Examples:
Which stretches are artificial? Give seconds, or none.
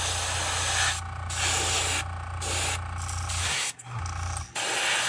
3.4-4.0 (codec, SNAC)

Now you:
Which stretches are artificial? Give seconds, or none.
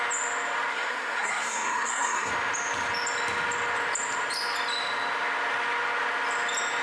0.7-2.3 (codec, SNAC)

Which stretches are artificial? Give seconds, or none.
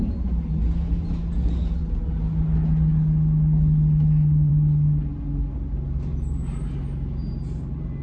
none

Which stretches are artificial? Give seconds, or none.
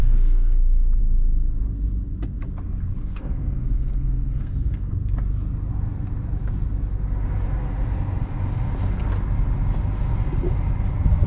0.0-1.0 (codec, SNAC); 3.0-4.9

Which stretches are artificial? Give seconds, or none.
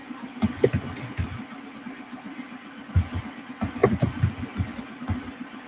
none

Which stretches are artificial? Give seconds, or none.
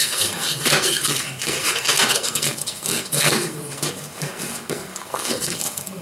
0.0-6.0 (codec, SNAC)